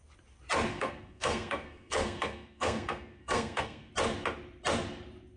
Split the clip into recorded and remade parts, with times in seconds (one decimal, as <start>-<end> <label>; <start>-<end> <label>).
0.0-0.7 recorded; 0.7-3.9 remade; 3.9-5.4 recorded